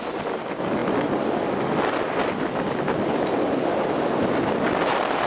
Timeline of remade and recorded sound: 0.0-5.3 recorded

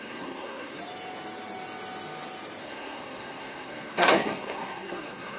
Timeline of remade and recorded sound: 0.0-0.8 remade; 0.8-2.6 recorded; 2.6-5.4 remade

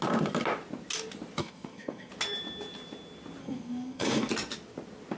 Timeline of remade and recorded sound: 0.0-1.4 recorded; 1.4-2.1 remade; 2.1-3.4 recorded; 3.4-4.3 remade; 4.3-5.2 recorded

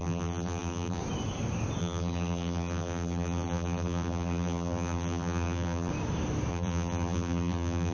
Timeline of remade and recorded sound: 0.0-1.0 remade; 1.0-1.8 recorded; 1.8-5.9 remade; 5.9-6.5 recorded; 6.5-7.9 remade

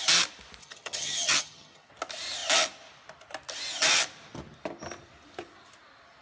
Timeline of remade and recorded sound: 0.0-0.6 recorded; 0.6-1.9 remade; 1.9-6.2 recorded

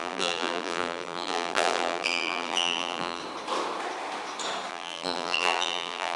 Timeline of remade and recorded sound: 0.0-3.2 remade; 3.2-4.7 recorded; 4.7-6.2 remade

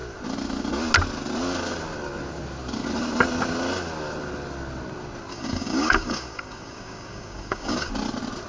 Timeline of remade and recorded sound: 0.0-5.3 recorded; 5.3-7.9 remade; 7.9-8.5 recorded